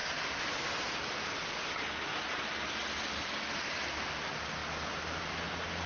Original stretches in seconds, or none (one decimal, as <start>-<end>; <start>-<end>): 0.0-5.9